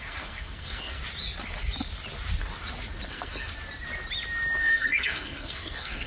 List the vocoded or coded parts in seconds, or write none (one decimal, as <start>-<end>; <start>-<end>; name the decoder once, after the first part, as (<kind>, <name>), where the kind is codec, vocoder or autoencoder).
0.0-1.0 (codec, SNAC); 3.1-3.5; 4.6-6.1